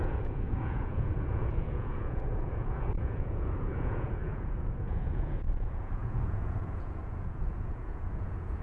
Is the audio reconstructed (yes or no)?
yes